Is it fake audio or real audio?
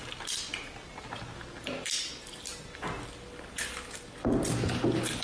real